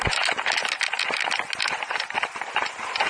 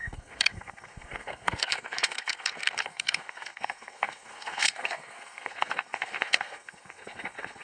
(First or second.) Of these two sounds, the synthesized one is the second